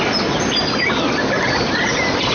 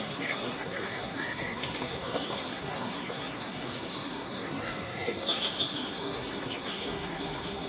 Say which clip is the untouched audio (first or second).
first